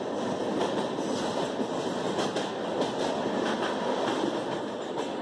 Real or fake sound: real